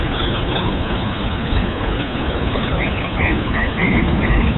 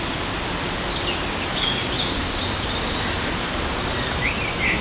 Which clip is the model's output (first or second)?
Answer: first